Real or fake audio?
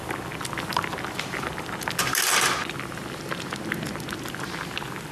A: real